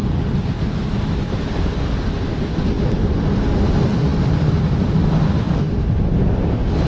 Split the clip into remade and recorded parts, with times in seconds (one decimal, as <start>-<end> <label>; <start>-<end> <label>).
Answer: 0.0-6.9 recorded